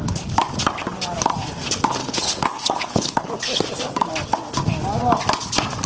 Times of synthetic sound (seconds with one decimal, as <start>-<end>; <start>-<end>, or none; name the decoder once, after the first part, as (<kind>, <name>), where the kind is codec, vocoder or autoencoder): 2.0-3.3 (codec, HILCodec)